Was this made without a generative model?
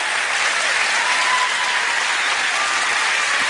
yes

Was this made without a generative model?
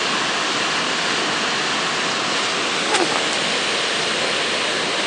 yes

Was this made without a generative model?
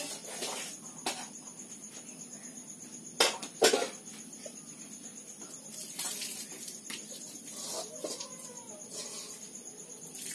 yes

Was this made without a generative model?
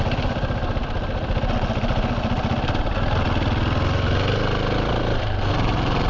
yes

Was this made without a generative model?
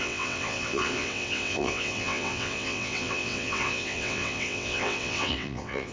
no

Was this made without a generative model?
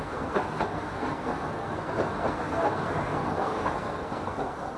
no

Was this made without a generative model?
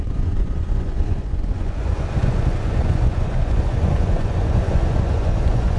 no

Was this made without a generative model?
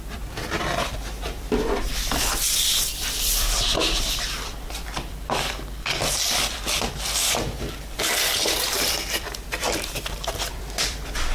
no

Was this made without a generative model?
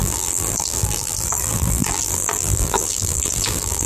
no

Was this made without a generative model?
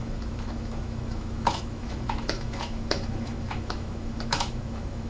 no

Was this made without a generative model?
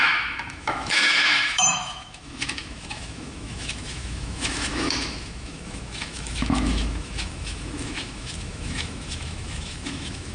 no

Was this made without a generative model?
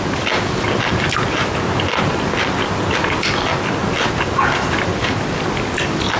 yes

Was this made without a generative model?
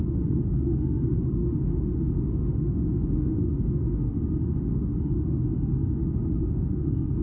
no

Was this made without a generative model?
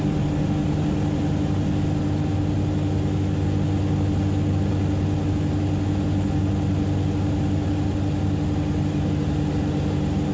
yes